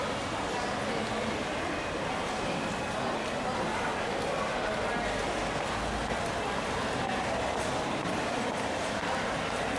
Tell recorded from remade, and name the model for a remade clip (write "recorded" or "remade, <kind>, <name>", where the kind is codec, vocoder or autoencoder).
recorded